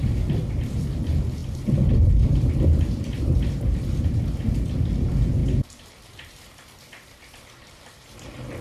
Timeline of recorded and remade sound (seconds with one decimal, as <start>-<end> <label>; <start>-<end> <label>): 0.0-1.4 remade; 1.4-2.1 recorded; 2.1-8.6 remade